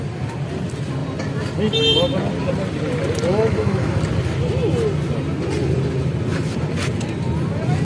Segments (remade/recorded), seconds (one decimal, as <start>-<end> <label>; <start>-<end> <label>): 0.0-3.3 recorded; 3.3-4.0 remade; 4.0-7.8 recorded